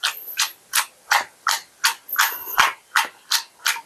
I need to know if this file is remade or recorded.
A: recorded